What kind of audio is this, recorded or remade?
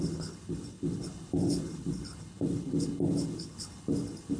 remade